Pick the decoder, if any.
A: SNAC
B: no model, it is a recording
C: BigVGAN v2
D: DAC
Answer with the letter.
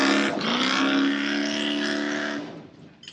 B